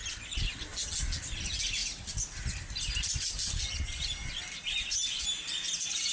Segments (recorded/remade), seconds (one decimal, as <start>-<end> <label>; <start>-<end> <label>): 0.0-6.1 recorded